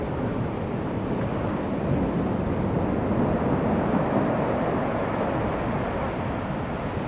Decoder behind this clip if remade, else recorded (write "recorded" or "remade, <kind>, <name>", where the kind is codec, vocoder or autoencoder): recorded